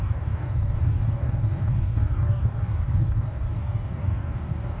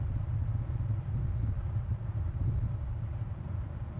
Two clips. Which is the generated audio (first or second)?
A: first